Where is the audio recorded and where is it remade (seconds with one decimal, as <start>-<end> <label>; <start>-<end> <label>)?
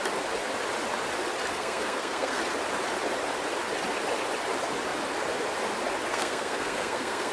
0.0-1.5 recorded; 1.5-2.4 remade; 2.4-6.1 recorded; 6.1-7.3 remade